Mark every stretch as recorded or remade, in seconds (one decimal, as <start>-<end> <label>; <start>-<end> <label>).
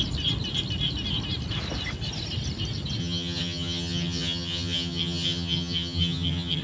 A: 0.0-3.0 recorded; 3.0-6.6 remade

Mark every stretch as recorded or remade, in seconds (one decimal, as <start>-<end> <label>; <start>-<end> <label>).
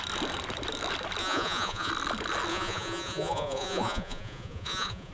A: 0.0-1.2 recorded; 1.2-1.9 remade; 1.9-2.5 recorded; 2.5-5.1 remade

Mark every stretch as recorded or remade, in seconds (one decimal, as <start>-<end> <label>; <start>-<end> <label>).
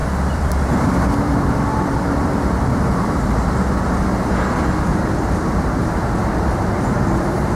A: 0.0-3.5 remade; 3.5-4.9 recorded; 4.9-7.6 remade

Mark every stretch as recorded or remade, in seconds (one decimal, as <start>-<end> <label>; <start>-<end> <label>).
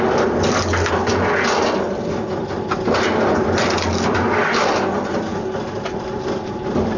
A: 0.0-7.0 recorded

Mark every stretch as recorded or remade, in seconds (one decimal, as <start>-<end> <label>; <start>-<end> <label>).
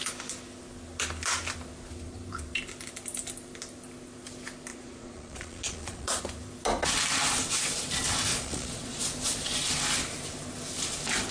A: 0.0-4.7 recorded; 4.7-6.2 remade; 6.2-8.3 recorded; 8.3-9.0 remade; 9.0-11.3 recorded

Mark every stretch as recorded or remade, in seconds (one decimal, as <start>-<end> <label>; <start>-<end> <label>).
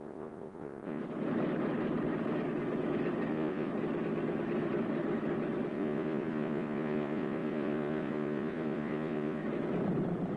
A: 0.0-1.0 remade; 1.0-3.3 recorded; 3.3-3.7 remade; 3.7-5.7 recorded; 5.7-9.4 remade; 9.4-10.4 recorded